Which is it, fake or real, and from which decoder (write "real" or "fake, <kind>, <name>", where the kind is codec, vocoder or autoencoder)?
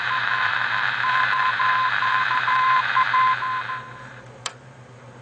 fake, vocoder, BigVGAN v2